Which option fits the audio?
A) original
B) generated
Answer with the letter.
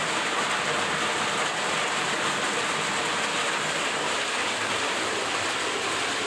B